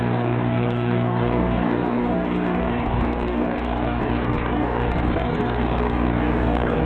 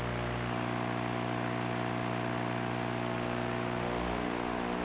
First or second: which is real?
second